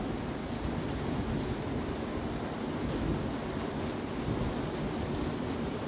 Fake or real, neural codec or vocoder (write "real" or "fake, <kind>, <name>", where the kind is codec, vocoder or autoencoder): real